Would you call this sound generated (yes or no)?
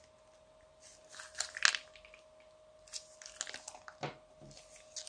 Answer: no